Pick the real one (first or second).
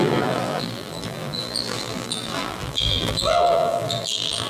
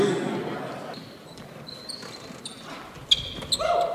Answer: second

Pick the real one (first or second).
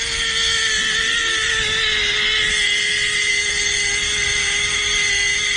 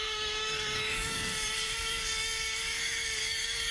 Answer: first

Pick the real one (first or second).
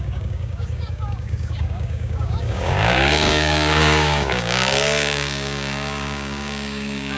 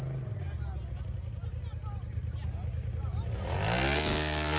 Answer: second